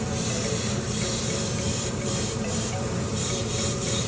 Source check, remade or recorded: remade